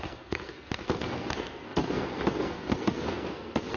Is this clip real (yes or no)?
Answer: no